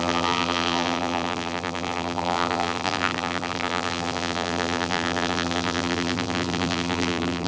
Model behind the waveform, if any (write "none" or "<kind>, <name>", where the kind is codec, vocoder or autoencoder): vocoder, BigVGAN v2